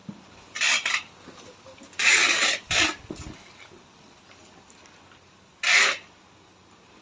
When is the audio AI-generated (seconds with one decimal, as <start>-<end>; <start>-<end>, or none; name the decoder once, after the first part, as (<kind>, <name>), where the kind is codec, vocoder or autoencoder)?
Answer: none